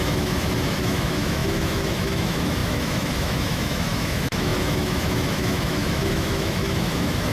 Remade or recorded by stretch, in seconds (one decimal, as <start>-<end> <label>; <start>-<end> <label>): 0.0-7.3 remade